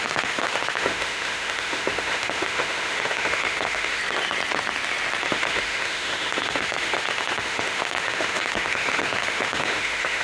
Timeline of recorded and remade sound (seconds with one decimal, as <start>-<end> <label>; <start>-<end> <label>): 0.0-4.0 remade; 4.0-5.2 recorded; 5.2-10.2 remade